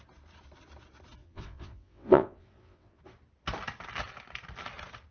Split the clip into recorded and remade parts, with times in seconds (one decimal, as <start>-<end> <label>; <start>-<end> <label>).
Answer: 0.0-1.2 recorded; 1.2-3.0 remade; 3.0-5.1 recorded